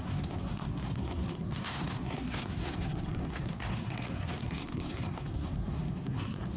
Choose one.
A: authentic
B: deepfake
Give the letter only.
B